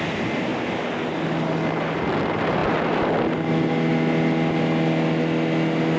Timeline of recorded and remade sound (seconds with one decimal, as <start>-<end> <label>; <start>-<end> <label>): 0.0-6.0 recorded